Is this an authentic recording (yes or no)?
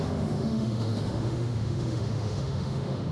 no